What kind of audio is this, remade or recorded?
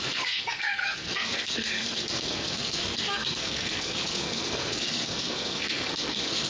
remade